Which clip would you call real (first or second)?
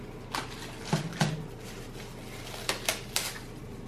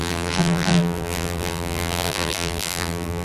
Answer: first